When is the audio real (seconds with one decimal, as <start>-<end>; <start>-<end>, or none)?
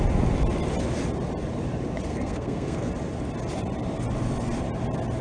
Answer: 0.0-2.1; 2.9-5.2